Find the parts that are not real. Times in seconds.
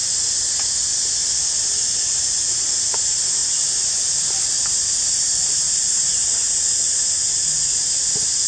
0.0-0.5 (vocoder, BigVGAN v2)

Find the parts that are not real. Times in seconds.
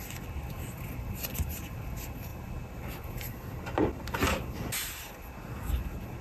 none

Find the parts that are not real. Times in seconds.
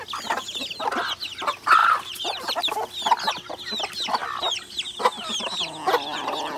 1.8-2.6 (vocoder, BigVGAN v2)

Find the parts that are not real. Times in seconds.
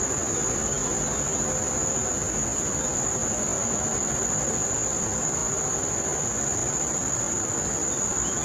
3.9-4.5 (vocoder, BigVGAN v2); 6.6-7.4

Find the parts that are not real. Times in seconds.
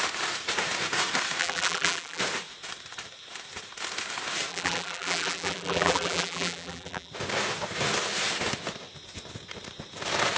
1.4-2.2 (vocoder, BigVGAN v2); 4.5-7.1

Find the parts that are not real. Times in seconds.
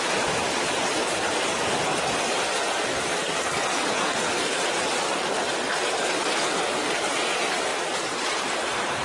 0.0-1.9 (vocoder, BigVGAN v2); 7.1-9.0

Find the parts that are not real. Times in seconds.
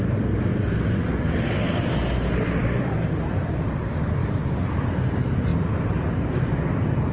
2.6-3.8 (vocoder, BigVGAN v2); 4.2-4.7; 5.5-6.5